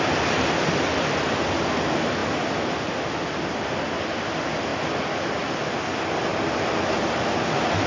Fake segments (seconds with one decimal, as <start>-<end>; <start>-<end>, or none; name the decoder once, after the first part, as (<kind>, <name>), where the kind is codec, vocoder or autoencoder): none